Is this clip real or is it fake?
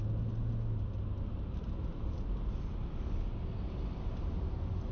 real